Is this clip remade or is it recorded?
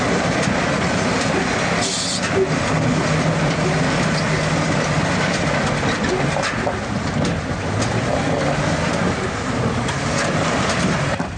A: recorded